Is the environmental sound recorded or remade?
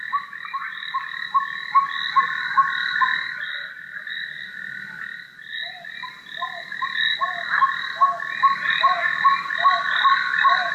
recorded